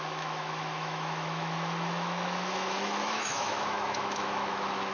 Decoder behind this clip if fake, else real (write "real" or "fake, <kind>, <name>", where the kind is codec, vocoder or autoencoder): fake, autoencoder, DAC-VAE